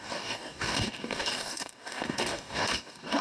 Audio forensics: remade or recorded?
remade